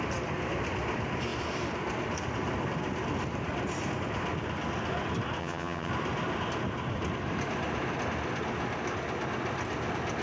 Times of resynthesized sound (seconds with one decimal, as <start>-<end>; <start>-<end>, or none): 5.4-5.9